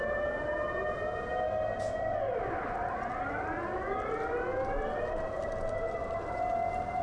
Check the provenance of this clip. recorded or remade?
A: recorded